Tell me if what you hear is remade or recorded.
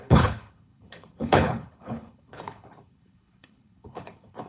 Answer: remade